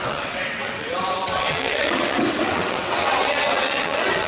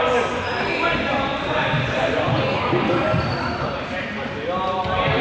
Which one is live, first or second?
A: second